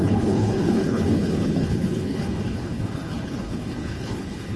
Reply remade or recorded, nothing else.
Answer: remade